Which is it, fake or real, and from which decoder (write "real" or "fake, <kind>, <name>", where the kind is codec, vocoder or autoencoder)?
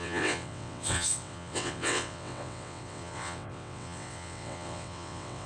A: fake, vocoder, WaveNeXt